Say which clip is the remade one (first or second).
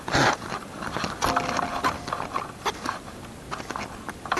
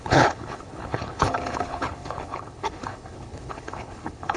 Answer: second